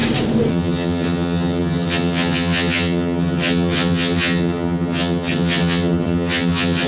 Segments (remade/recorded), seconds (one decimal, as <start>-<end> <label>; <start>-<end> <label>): 0.0-0.5 recorded; 0.5-6.9 remade